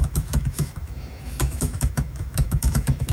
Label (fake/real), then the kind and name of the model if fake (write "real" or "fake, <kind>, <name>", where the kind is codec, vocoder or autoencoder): fake, autoencoder, DAC-VAE